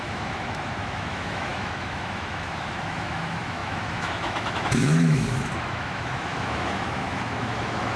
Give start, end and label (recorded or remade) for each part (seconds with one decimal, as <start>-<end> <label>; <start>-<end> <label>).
0.0-8.0 remade

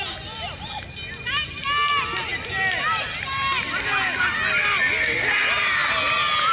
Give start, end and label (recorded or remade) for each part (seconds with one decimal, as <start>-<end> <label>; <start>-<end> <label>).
0.0-6.5 recorded

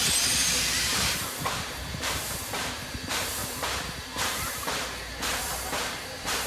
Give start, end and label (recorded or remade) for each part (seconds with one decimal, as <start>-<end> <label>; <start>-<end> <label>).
0.0-6.5 remade